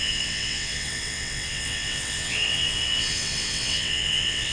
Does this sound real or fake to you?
fake